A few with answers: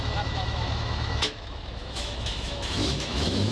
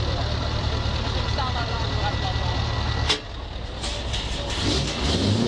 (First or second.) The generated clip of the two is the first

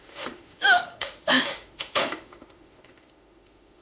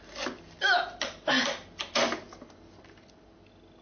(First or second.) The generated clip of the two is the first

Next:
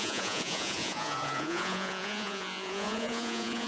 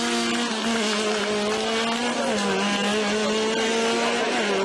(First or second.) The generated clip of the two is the first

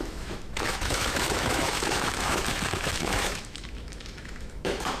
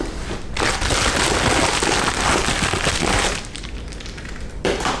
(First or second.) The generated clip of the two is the first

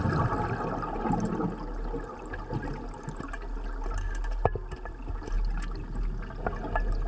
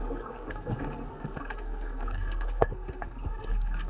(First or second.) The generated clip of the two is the second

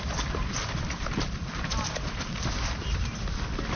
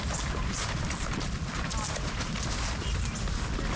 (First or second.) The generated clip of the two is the first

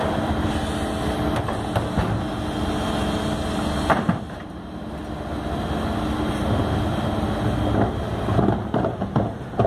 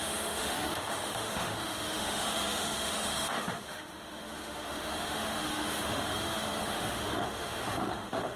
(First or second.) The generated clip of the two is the second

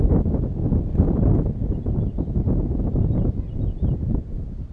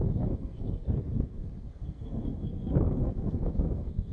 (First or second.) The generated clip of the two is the second